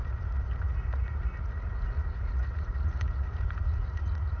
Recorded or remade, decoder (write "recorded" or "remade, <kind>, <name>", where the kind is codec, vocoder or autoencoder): remade, vocoder, Vocos